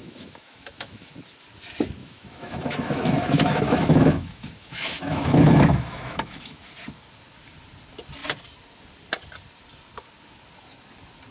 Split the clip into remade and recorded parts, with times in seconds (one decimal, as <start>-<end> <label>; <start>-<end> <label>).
0.0-1.1 remade; 1.1-2.0 recorded; 2.0-6.7 remade; 6.7-11.3 recorded